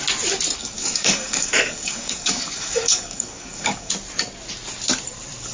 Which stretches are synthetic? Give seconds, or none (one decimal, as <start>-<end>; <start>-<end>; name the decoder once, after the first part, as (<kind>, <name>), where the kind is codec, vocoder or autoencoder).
0.6-3.9 (codec, DAC)